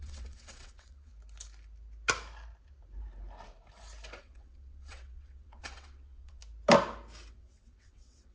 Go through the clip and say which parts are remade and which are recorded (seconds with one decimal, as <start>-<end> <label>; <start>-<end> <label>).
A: 0.0-1.1 remade; 1.1-4.2 recorded; 4.2-6.4 remade; 6.4-7.3 recorded; 7.3-8.3 remade